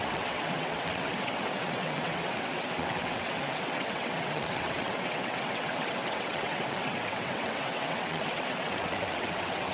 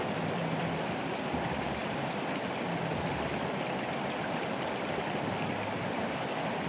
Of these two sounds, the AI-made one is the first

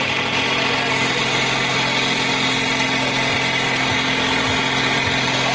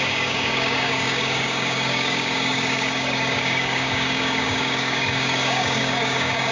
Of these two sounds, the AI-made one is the second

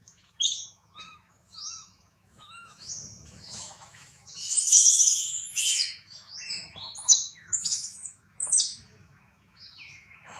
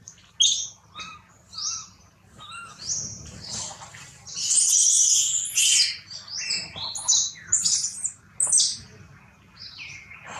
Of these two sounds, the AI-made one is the first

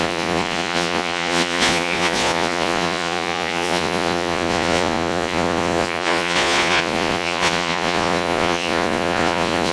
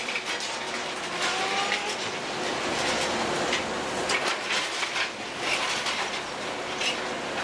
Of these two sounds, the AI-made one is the first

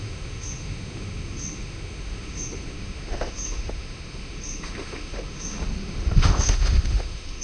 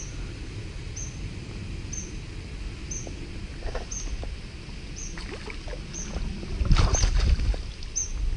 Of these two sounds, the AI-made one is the first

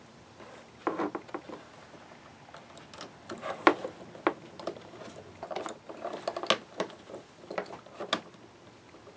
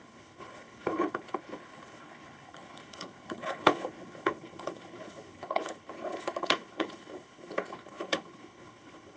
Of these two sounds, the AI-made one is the second